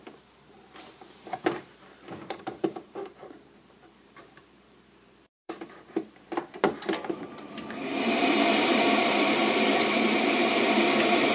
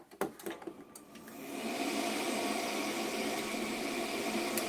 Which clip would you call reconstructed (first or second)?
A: first